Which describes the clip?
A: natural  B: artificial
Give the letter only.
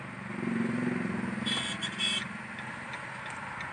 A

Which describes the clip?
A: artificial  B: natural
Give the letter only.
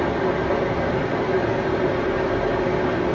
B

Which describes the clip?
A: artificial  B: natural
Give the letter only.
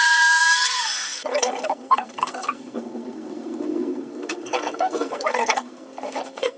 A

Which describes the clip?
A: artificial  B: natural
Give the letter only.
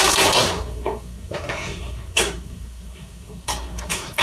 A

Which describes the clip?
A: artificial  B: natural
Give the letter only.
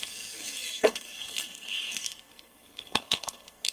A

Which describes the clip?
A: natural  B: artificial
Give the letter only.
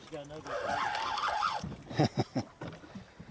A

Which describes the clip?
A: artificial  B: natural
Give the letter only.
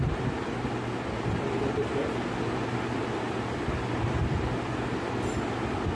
B